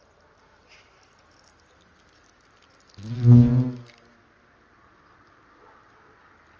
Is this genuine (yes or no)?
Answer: yes